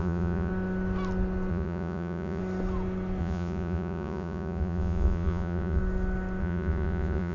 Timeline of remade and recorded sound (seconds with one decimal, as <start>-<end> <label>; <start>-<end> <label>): 0.0-0.5 remade; 0.5-1.5 recorded; 1.5-2.4 remade; 2.4-3.2 recorded; 3.2-5.8 remade; 5.8-6.4 recorded; 6.4-7.3 remade